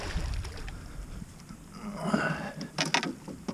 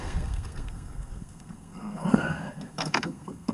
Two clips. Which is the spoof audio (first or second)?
second